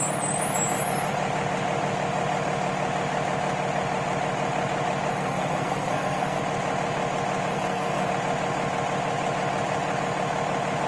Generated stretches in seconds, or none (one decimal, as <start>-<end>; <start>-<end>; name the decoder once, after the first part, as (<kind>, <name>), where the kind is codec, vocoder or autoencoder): 5.1-6.4 (codec, SNAC); 7.5-8.1